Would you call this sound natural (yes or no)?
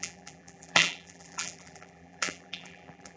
no